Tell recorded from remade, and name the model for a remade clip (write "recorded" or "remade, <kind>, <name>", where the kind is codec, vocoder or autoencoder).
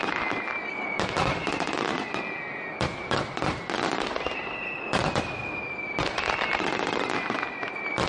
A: recorded